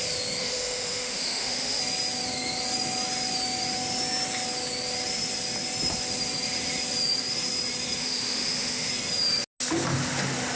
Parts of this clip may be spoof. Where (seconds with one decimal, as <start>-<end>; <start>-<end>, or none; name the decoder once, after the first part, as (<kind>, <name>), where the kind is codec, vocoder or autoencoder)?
0.4-1.8 (autoencoder, DAC-VAE); 8.0-8.9